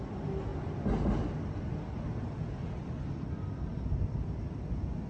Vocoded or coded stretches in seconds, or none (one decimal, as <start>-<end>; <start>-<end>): none